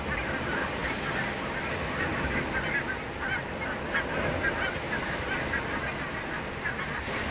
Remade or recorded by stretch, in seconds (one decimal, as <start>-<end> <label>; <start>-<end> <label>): 0.0-7.3 recorded